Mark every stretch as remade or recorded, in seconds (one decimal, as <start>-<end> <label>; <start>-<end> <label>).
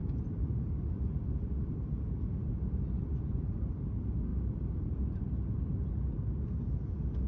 0.0-1.5 remade; 1.5-2.4 recorded; 2.4-3.9 remade; 3.9-4.3 recorded; 4.3-5.6 remade; 5.6-7.3 recorded